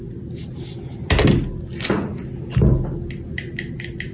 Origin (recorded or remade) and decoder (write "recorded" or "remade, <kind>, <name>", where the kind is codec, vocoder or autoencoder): recorded